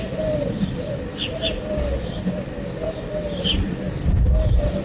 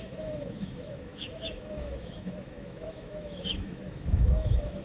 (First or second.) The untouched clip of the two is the first